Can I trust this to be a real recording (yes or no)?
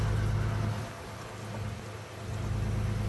yes